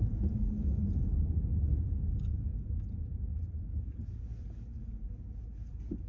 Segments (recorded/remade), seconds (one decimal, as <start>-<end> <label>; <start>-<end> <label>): 0.0-6.1 recorded